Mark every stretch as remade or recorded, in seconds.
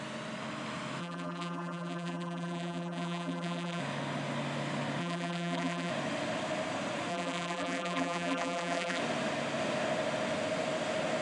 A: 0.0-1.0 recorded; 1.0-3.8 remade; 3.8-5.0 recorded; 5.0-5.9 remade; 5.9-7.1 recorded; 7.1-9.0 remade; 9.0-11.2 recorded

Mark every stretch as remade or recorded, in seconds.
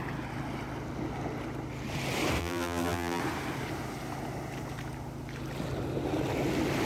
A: 0.0-2.4 recorded; 2.4-3.2 remade; 3.2-6.9 recorded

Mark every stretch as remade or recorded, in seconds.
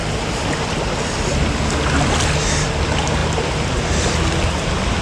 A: 0.0-5.0 recorded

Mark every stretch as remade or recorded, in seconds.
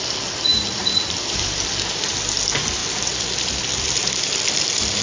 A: 0.0-0.5 recorded; 0.5-1.7 remade; 1.7-2.8 recorded; 2.8-4.5 remade; 4.5-5.0 recorded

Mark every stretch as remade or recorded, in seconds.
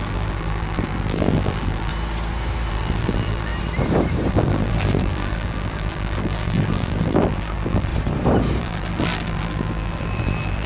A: 0.0-1.9 remade; 1.9-2.7 recorded; 2.7-3.5 remade; 3.5-4.3 recorded; 4.3-7.9 remade; 7.9-8.6 recorded; 8.6-10.7 remade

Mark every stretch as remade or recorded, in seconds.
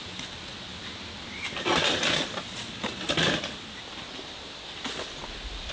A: 0.0-5.7 recorded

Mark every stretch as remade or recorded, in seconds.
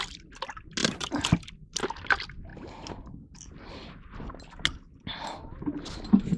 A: 0.0-0.8 recorded; 0.8-1.8 remade; 1.8-6.4 recorded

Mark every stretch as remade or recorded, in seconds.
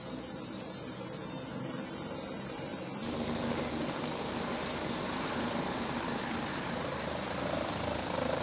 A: 0.0-2.7 remade; 2.7-4.2 recorded; 4.2-8.4 remade